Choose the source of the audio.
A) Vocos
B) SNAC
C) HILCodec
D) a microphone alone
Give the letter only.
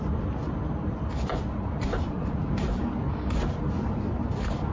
D